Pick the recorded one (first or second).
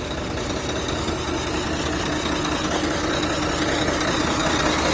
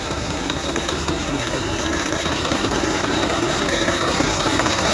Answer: first